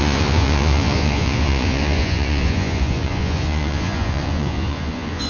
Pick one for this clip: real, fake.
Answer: fake